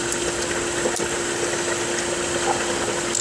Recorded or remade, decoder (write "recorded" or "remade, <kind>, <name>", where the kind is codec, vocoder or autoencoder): recorded